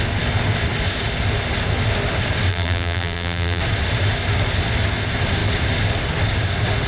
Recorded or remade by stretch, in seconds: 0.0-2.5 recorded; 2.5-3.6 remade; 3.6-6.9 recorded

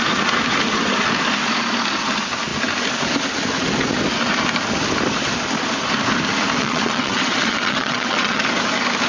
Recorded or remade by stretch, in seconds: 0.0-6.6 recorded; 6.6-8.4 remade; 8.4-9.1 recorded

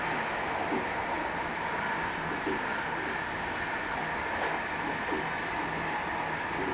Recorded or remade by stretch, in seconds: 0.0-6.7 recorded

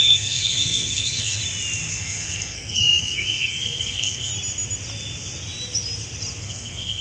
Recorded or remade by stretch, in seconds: 0.0-1.4 remade; 1.4-1.9 recorded; 1.9-4.3 remade; 4.3-6.4 recorded; 6.4-7.0 remade

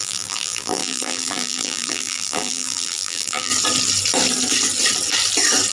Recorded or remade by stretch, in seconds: 0.0-3.5 remade; 3.5-5.7 recorded